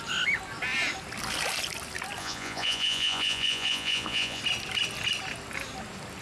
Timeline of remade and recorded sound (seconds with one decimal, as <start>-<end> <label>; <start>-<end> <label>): 0.0-2.2 recorded; 2.2-4.4 remade; 4.4-6.2 recorded